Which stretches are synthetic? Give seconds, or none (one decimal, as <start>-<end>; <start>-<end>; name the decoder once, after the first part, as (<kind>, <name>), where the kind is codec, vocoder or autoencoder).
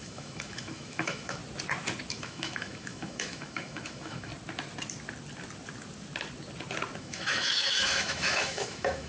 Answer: 0.0-1.4 (autoencoder, DAC-VAE); 2.1-4.3; 7.0-9.1